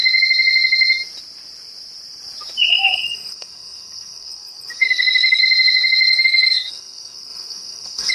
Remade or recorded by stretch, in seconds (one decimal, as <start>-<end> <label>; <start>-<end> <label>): 0.0-2.7 recorded; 2.7-5.4 remade; 5.4-6.2 recorded; 6.2-8.1 remade